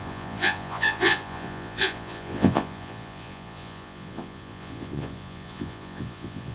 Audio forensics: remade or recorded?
remade